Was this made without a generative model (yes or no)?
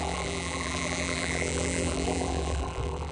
no